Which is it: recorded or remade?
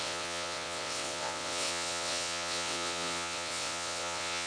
remade